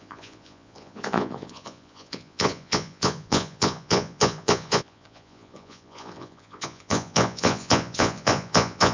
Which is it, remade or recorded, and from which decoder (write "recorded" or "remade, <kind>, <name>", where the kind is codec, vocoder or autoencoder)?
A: remade, vocoder, Vocos